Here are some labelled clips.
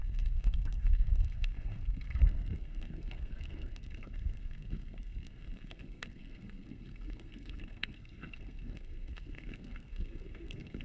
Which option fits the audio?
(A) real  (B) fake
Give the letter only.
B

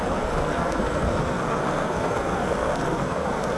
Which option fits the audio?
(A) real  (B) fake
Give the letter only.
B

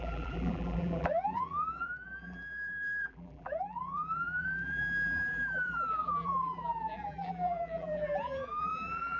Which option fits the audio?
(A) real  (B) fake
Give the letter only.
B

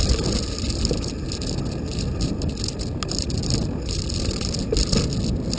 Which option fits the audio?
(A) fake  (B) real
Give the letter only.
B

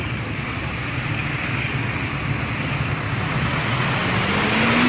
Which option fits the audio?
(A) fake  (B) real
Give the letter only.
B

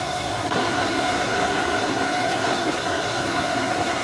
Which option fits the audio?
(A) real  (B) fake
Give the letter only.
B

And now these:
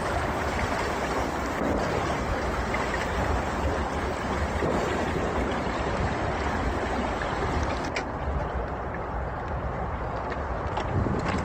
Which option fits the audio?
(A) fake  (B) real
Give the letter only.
A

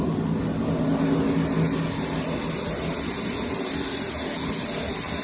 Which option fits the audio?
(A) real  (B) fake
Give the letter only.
A